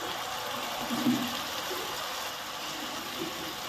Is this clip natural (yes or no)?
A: yes